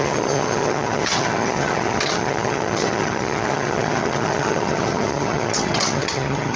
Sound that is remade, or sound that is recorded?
remade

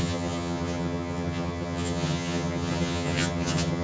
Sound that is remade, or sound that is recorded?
remade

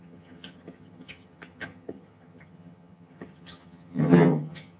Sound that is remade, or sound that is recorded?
remade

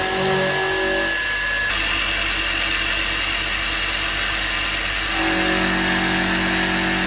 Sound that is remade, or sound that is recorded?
recorded